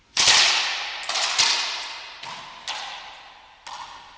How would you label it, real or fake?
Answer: real